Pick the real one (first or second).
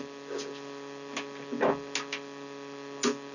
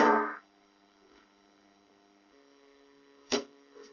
first